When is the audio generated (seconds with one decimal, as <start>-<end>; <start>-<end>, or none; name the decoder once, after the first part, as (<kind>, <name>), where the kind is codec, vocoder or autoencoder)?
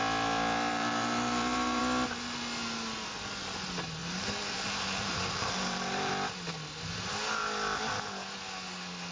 0.7-1.8 (vocoder, BigVGAN v2); 4.0-6.1